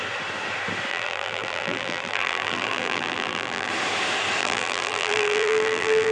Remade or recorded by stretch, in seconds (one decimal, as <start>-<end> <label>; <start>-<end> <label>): 0.0-0.9 recorded; 0.9-3.7 remade; 3.7-4.4 recorded; 4.4-6.1 remade